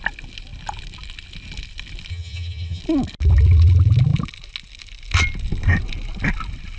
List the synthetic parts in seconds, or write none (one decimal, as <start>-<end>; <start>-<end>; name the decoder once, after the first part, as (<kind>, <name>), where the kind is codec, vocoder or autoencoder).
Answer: 2.1-2.8 (vocoder, HiFi-GAN)